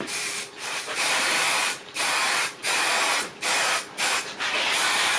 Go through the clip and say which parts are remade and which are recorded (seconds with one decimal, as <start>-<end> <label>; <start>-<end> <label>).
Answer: 0.0-5.2 remade